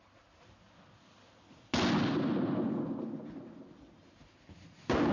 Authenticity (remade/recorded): recorded